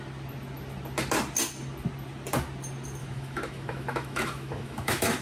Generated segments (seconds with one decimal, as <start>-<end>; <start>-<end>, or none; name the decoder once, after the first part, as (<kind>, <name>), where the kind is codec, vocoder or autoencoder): 3.0-5.2 (autoencoder, DAC-VAE)